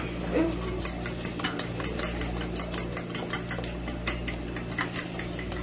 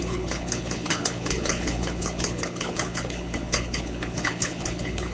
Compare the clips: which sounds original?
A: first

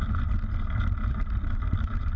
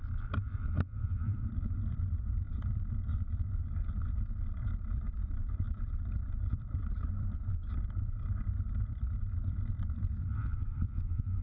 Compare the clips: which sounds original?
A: first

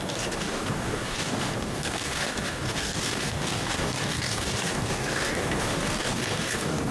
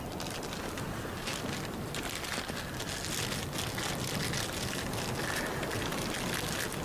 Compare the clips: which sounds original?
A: second